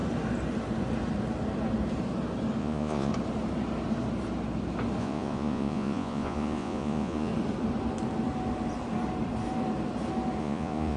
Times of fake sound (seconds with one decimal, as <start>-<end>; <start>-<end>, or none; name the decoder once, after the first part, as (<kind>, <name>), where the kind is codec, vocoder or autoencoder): 2.6-3.1 (vocoder, Vocos); 5.0-7.3; 10.4-11.0